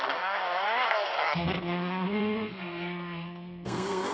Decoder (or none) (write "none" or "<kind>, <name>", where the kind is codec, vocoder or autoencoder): codec, SNAC